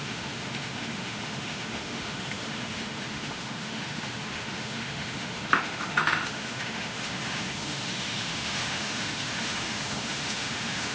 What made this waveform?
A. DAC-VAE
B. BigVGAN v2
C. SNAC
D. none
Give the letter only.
A